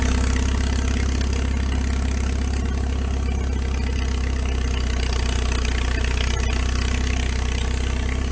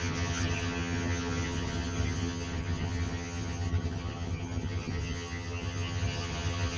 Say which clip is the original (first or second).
first